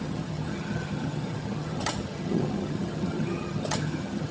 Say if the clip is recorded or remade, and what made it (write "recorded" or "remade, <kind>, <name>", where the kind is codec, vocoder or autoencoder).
remade, vocoder, HiFi-GAN